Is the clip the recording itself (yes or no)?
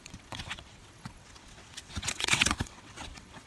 no